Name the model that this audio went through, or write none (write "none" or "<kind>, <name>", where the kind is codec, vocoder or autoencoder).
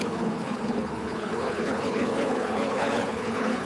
codec, HILCodec